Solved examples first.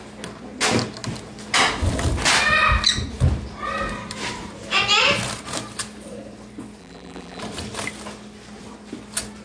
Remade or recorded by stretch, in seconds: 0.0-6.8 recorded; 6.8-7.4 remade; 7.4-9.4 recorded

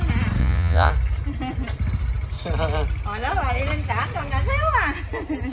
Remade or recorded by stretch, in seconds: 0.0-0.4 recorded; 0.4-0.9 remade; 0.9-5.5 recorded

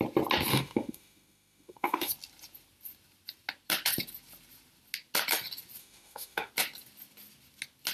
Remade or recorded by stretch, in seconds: 0.0-0.5 recorded; 0.5-2.1 remade; 2.1-5.8 recorded; 5.8-6.5 remade; 6.5-7.9 recorded

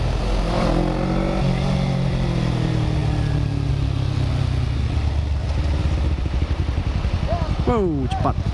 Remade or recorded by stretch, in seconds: 0.0-8.5 recorded